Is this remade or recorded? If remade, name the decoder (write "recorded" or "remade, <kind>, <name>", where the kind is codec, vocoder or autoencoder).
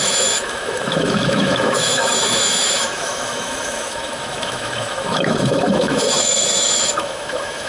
remade, autoencoder, DAC-VAE